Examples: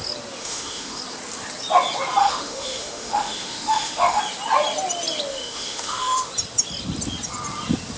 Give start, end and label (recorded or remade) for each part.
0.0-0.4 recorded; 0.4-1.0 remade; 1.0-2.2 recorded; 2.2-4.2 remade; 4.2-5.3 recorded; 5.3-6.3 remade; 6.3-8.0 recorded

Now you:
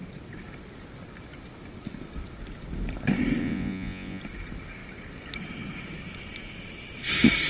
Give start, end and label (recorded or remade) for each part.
0.0-3.4 recorded; 3.4-4.2 remade; 4.2-7.5 recorded

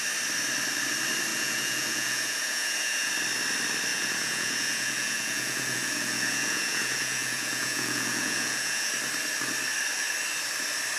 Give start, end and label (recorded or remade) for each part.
0.0-1.3 recorded; 1.3-3.1 remade; 3.1-3.9 recorded; 3.9-8.9 remade; 8.9-11.0 recorded

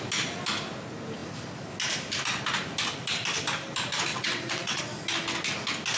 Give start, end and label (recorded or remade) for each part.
0.0-4.1 recorded; 4.1-4.8 remade; 4.8-6.0 recorded

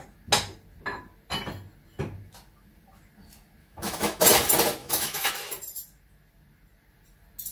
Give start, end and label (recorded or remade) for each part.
0.0-3.6 recorded; 3.6-4.2 remade; 4.2-4.8 recorded; 4.8-5.3 remade; 5.3-7.5 recorded

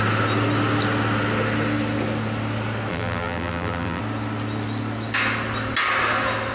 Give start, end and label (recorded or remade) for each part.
0.0-2.9 recorded; 2.9-4.0 remade; 4.0-6.5 recorded

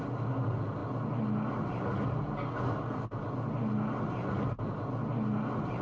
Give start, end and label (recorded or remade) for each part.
0.0-5.8 recorded

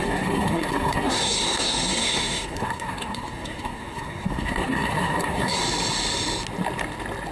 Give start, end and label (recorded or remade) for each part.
0.0-5.6 remade; 5.6-7.3 recorded